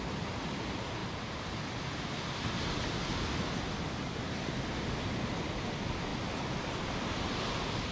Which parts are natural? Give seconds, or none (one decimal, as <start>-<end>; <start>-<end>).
0.0-7.9